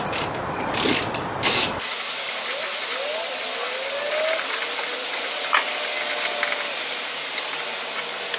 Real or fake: real